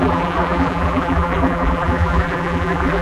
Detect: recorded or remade remade